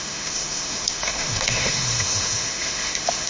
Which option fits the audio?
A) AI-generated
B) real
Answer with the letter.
A